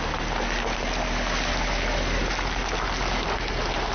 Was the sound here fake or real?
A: real